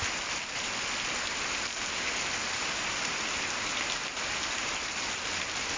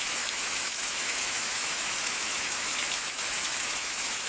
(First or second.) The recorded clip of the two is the first